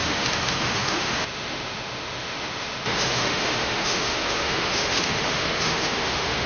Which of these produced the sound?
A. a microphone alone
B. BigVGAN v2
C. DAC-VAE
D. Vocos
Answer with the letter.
C